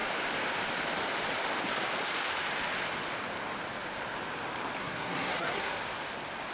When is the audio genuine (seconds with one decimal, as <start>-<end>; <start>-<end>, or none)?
0.0-4.8; 5.8-6.5